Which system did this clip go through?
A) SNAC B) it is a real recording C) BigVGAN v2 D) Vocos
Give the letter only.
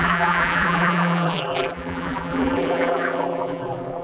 C